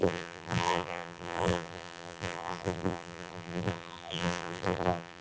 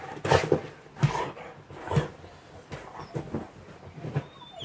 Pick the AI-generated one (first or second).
first